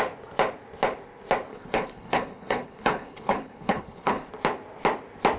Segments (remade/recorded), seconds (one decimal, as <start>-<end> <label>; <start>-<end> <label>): 0.0-1.5 recorded; 1.5-4.3 remade; 4.3-5.4 recorded